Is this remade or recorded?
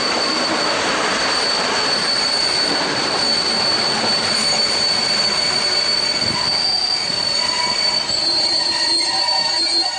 recorded